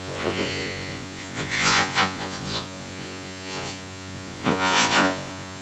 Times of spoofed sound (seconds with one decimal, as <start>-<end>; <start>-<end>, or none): 0.0-5.6